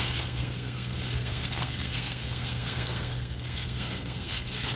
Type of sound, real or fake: fake